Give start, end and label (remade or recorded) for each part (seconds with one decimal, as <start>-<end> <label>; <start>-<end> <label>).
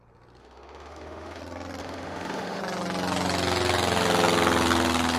0.0-0.4 recorded; 0.4-1.4 remade; 1.4-1.8 recorded; 1.8-2.6 remade; 2.6-5.2 recorded